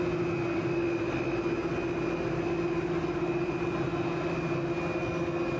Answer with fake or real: real